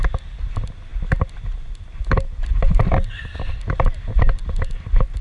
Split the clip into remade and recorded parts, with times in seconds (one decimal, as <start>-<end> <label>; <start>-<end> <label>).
0.0-5.2 recorded